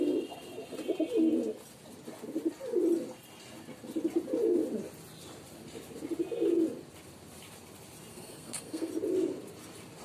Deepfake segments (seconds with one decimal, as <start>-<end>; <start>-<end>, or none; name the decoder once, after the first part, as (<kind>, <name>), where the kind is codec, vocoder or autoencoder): 8.1-8.9 (codec, SNAC)